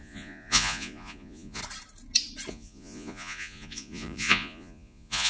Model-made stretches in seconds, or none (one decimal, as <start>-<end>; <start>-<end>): 0.0-1.6; 2.5-5.3